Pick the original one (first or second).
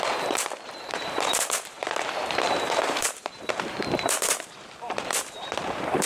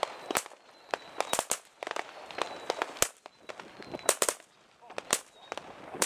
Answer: second